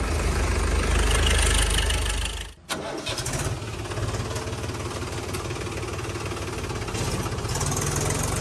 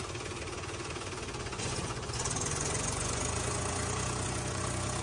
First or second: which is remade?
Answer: second